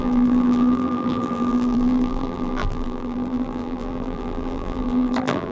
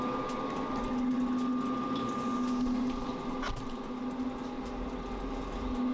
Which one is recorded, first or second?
second